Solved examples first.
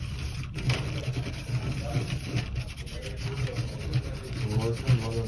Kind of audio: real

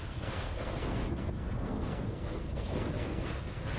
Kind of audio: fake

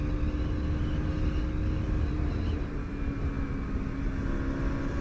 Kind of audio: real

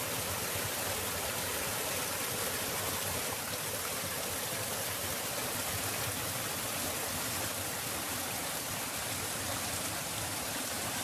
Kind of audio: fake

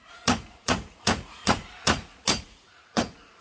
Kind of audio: fake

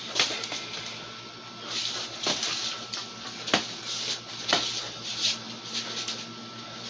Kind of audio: real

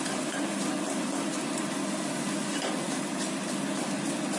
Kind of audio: real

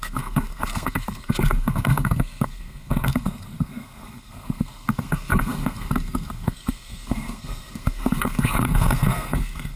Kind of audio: fake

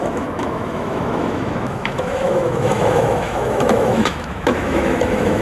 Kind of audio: fake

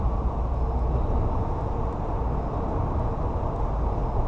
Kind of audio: real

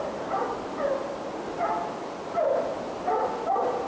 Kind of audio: real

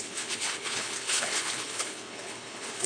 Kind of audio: fake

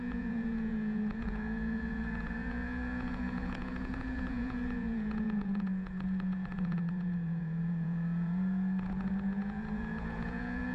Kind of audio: fake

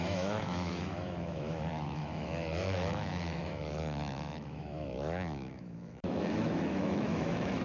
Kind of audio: fake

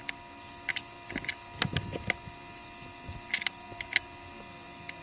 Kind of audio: real